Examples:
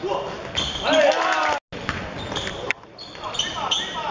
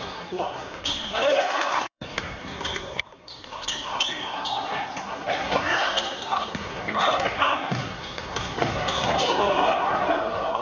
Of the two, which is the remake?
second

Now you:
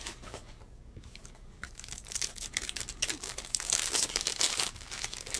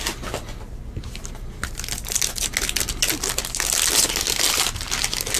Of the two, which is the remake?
first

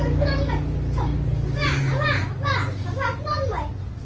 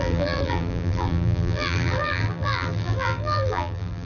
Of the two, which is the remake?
second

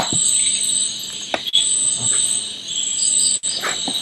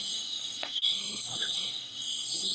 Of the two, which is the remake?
second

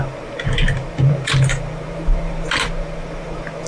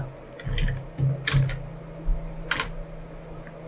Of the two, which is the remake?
first